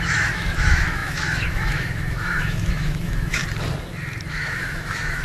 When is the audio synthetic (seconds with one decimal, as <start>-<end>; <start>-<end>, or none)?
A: 0.0-3.4; 4.3-5.2